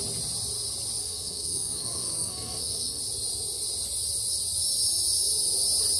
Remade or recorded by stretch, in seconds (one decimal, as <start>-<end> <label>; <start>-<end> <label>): 0.0-1.0 recorded; 1.0-3.0 remade; 3.0-6.0 recorded